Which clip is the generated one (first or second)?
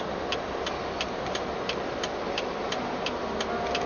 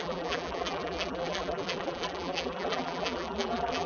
second